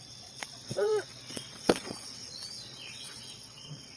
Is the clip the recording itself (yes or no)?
no